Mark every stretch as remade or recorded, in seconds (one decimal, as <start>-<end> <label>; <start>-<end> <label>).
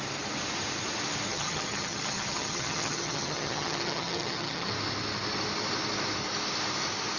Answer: 0.0-1.3 recorded; 1.3-4.7 remade; 4.7-7.2 recorded